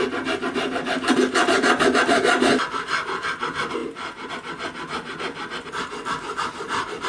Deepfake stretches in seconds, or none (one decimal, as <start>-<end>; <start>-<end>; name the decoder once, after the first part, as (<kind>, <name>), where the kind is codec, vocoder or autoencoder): none